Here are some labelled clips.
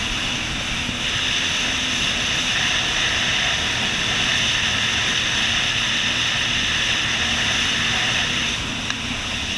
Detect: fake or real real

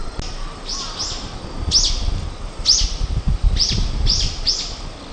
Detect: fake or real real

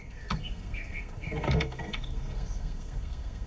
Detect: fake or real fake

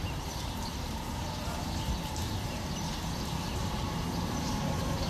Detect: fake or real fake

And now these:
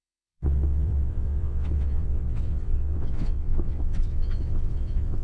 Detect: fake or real fake